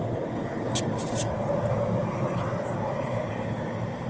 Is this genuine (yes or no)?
yes